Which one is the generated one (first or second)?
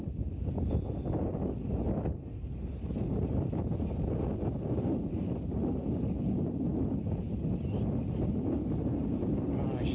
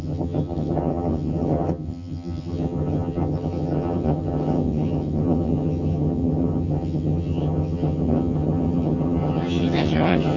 second